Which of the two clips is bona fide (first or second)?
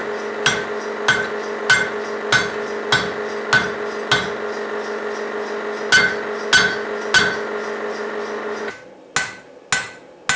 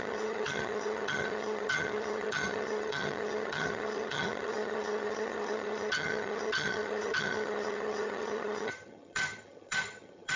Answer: first